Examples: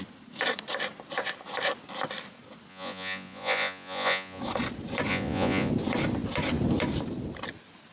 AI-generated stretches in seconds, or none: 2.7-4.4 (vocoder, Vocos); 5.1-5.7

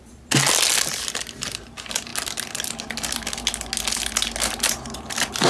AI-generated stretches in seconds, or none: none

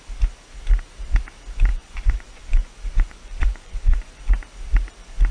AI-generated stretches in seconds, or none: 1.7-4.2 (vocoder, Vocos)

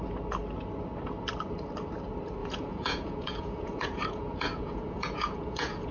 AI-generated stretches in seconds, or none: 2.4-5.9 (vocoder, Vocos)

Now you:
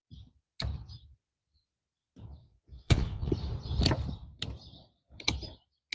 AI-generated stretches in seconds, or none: 2.4-3.3 (vocoder, Vocos)